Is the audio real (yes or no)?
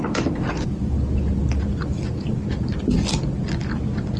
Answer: yes